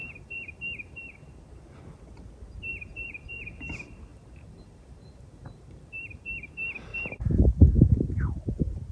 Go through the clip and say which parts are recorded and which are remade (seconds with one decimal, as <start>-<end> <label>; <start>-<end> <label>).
0.0-0.5 remade; 0.5-2.7 recorded; 2.7-3.5 remade; 3.5-4.1 recorded; 4.1-6.5 remade; 6.5-6.9 recorded; 6.9-8.2 remade; 8.2-8.9 recorded